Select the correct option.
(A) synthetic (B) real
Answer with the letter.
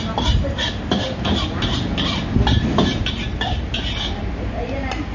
B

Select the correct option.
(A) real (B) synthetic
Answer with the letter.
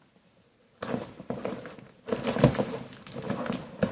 A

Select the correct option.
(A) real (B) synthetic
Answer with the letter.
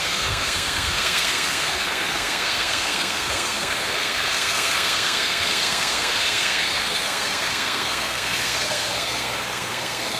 B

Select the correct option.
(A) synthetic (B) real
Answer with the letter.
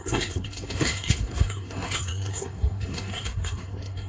A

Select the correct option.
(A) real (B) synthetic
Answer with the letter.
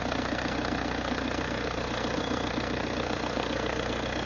B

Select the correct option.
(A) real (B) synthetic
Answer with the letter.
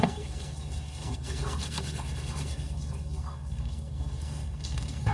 B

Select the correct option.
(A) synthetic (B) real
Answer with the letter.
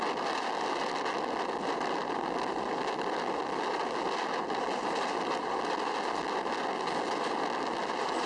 B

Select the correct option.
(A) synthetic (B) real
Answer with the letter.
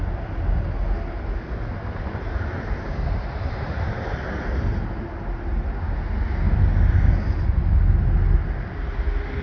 B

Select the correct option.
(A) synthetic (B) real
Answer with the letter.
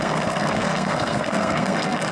A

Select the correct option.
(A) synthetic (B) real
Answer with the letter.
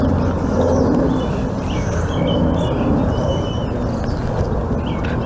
B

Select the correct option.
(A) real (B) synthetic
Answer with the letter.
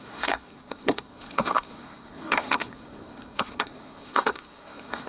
B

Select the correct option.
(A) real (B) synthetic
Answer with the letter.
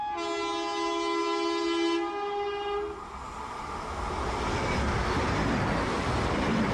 A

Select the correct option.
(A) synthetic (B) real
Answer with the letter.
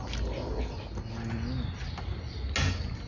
B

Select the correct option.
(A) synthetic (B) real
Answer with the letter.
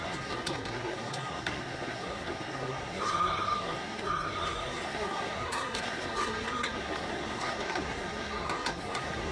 A